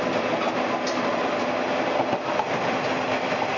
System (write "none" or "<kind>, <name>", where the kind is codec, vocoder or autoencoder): none